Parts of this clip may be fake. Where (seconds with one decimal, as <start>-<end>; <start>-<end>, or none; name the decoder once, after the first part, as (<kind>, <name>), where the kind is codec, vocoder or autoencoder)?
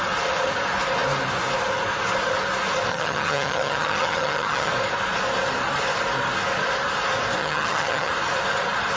2.9-4.7 (vocoder, HiFi-GAN); 7.4-8.1